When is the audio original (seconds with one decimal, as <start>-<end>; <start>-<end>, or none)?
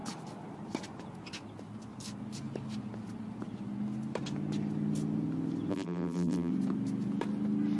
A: 0.0-5.7; 6.5-7.8